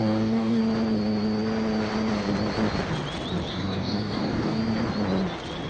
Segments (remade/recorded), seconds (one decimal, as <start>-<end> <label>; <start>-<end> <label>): 0.0-0.6 remade; 0.6-3.5 recorded; 3.5-4.6 remade; 4.6-5.7 recorded